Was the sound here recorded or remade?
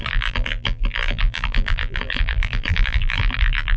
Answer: remade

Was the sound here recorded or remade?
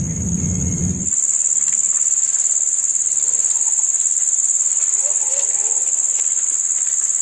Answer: recorded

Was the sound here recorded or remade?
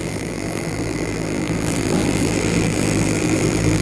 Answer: remade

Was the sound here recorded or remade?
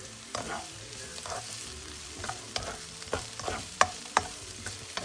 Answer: remade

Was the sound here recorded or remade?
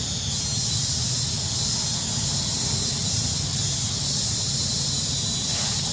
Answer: recorded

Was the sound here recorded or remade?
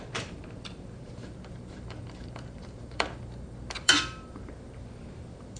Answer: remade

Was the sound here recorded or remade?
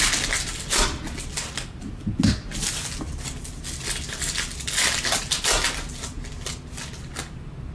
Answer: recorded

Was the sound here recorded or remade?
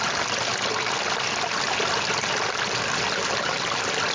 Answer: recorded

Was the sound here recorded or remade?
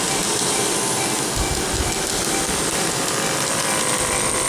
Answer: recorded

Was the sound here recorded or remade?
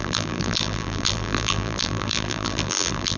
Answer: remade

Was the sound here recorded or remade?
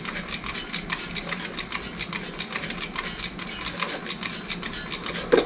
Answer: recorded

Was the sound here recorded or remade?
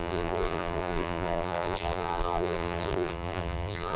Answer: remade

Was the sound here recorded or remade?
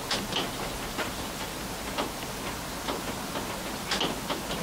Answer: recorded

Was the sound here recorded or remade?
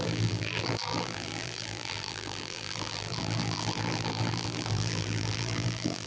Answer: remade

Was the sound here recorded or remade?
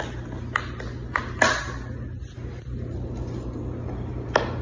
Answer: recorded